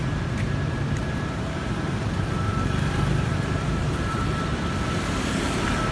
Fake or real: fake